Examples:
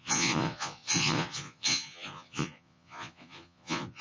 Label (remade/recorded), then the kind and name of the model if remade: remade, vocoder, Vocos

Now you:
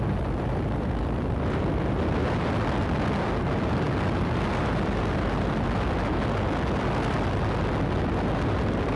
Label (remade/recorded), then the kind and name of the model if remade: recorded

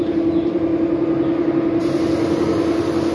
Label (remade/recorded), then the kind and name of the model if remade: recorded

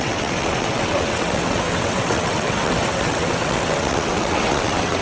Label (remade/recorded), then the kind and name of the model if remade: remade, vocoder, WaveNeXt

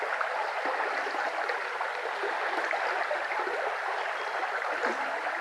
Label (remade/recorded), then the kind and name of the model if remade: recorded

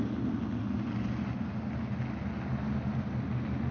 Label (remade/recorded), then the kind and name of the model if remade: recorded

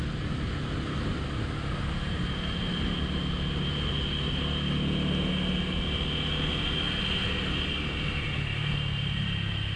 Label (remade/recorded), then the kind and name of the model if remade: recorded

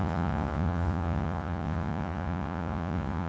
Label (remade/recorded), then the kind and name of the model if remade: remade, vocoder, Vocos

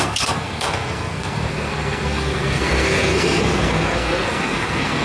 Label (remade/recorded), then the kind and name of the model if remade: remade, codec, SNAC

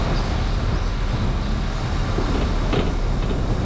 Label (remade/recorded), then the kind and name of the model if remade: recorded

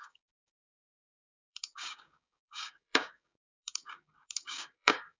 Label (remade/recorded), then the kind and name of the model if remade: remade, codec, DAC